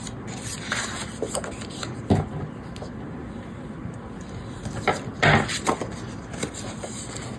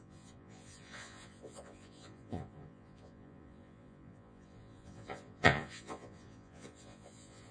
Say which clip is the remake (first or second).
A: second